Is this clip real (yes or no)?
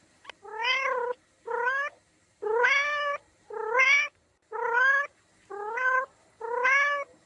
yes